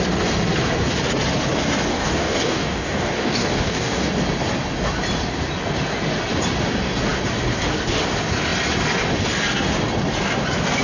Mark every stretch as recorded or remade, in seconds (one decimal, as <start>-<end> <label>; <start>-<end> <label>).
0.0-1.9 recorded; 1.9-4.1 remade; 4.1-10.8 recorded